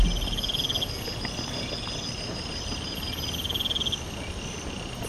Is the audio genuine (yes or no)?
yes